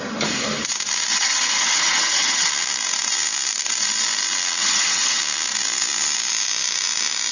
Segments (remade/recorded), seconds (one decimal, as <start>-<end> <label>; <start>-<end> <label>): 0.0-1.1 recorded; 1.1-2.5 remade; 2.5-4.6 recorded; 4.6-5.2 remade; 5.2-7.3 recorded